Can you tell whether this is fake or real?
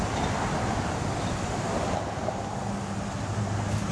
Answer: real